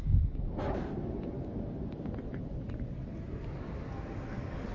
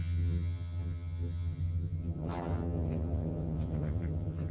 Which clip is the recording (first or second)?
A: first